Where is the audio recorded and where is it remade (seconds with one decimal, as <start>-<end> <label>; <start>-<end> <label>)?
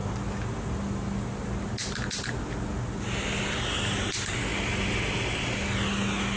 0.0-6.4 recorded